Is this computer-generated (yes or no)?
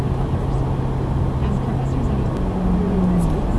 no